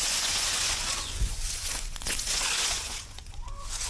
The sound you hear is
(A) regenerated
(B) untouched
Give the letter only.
A